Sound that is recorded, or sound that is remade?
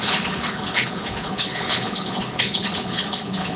remade